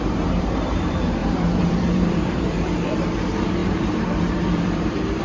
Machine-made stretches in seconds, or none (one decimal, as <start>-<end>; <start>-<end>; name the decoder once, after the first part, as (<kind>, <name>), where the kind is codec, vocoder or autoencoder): 0.0-5.2 (vocoder, BigVGAN v2)